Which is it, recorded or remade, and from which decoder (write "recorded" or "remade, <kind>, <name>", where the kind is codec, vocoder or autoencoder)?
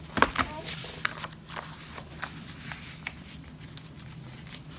recorded